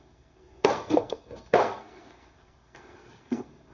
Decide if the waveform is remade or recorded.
remade